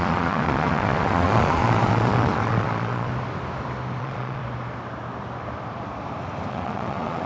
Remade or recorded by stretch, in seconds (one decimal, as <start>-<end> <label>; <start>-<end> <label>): 0.0-3.1 remade; 3.1-4.0 recorded; 4.0-4.4 remade; 4.4-6.5 recorded; 6.5-7.3 remade